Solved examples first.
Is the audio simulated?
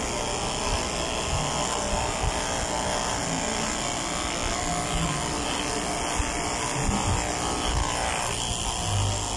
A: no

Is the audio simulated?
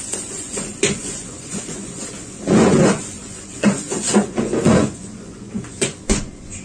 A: yes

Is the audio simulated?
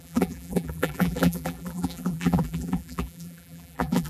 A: yes